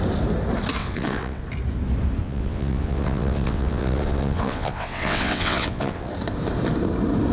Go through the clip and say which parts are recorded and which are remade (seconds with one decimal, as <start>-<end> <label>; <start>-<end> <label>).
0.0-0.8 recorded; 0.8-1.4 remade; 1.4-2.2 recorded; 2.2-6.1 remade; 6.1-7.3 recorded